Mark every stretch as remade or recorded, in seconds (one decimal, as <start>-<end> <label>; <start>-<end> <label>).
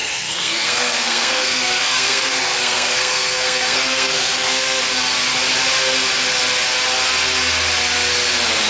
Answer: 0.0-4.8 remade; 4.8-8.7 recorded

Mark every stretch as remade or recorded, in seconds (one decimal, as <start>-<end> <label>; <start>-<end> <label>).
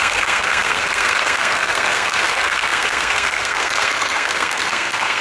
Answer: 0.0-5.2 remade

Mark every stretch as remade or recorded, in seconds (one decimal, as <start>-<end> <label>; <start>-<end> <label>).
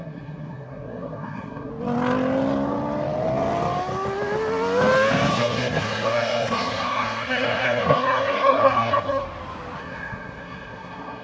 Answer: 0.0-1.7 remade; 1.7-5.3 recorded; 5.3-9.2 remade; 9.2-9.8 recorded; 9.8-11.2 remade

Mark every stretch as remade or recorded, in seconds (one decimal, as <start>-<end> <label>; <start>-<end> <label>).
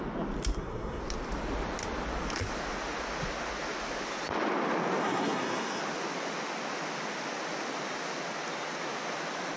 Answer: 0.0-0.5 recorded; 0.5-1.0 remade; 1.0-5.0 recorded; 5.0-5.8 remade; 5.8-9.6 recorded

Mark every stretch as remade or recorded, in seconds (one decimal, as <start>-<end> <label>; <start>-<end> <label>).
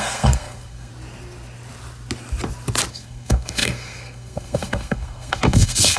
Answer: 0.0-0.9 remade; 0.9-2.9 recorded; 2.9-6.0 remade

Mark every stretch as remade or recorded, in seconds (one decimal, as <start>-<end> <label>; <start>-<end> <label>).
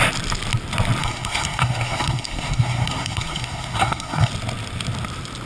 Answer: 0.0-1.0 recorded; 1.0-4.3 remade; 4.3-5.5 recorded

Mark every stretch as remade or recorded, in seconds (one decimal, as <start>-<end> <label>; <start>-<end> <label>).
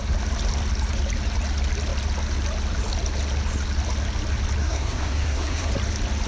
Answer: 0.0-4.6 recorded; 4.6-5.7 remade; 5.7-6.3 recorded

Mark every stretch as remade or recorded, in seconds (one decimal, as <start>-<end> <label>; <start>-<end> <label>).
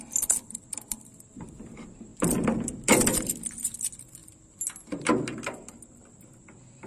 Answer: 0.0-6.9 recorded